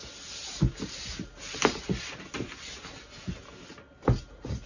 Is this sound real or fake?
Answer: real